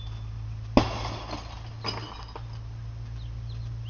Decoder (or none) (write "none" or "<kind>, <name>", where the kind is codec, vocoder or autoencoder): none